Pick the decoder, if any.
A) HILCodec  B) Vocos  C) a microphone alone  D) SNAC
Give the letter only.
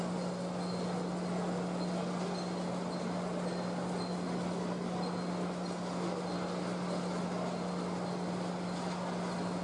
C